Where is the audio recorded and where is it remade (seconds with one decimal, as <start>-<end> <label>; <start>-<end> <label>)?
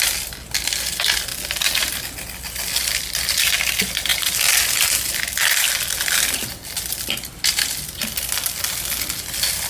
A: 0.0-9.7 recorded